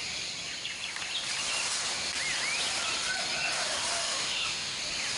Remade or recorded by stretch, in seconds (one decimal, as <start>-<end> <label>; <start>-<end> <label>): 0.0-4.0 recorded; 4.0-4.8 remade; 4.8-5.2 recorded